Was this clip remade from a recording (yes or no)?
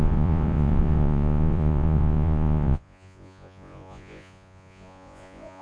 yes